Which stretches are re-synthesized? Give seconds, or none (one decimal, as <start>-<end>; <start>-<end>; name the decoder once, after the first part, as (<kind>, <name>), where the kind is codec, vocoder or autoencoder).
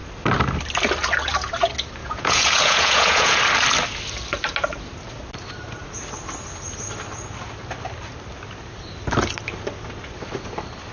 2.0-3.4 (vocoder, Vocos)